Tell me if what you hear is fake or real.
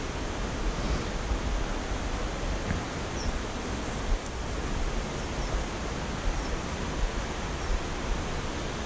real